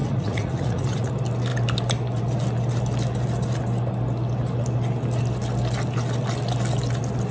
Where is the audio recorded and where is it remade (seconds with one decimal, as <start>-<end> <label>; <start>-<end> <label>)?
0.0-1.1 remade; 1.1-7.3 recorded